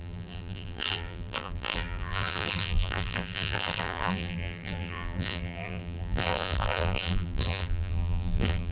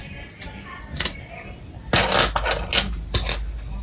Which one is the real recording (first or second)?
second